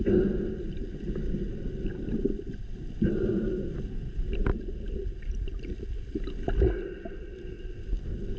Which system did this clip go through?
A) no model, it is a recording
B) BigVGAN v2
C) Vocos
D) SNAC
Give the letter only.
A